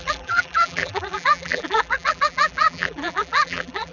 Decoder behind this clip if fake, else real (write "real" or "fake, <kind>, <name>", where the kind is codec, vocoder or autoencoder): fake, vocoder, BigVGAN v2